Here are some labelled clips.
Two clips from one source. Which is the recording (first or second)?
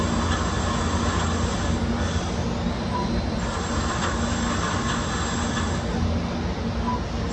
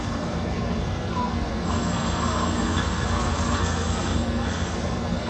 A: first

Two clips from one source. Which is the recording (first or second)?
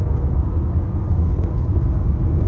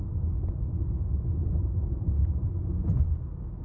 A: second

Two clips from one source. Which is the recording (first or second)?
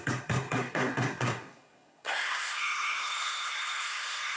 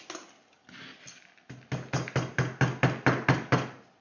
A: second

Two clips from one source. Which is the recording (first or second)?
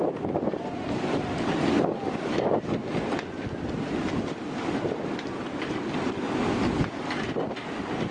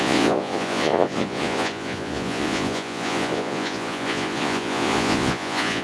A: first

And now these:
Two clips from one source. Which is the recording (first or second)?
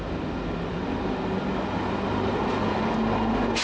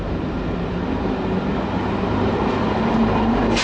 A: first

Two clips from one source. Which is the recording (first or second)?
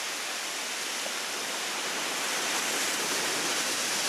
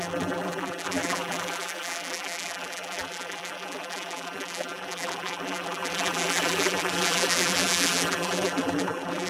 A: first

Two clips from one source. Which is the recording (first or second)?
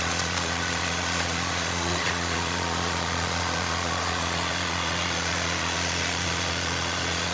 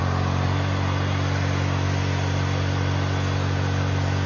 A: second